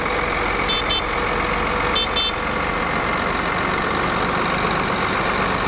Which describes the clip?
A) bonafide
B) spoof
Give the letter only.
A